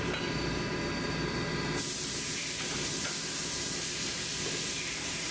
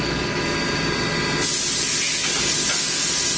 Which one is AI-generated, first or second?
first